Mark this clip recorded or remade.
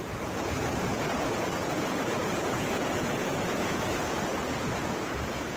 remade